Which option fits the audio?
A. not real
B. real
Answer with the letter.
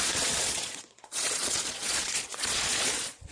A